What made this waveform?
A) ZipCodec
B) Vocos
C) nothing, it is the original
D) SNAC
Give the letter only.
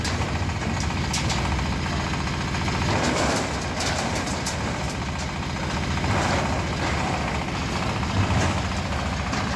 C